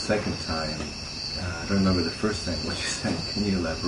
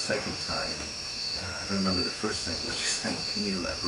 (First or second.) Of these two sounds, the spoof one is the second